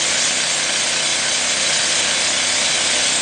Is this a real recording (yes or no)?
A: yes